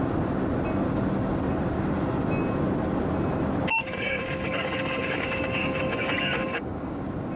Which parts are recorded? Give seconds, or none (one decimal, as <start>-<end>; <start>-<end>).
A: 0.0-3.8; 7.0-7.4